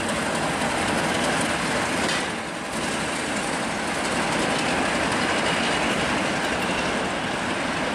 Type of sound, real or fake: real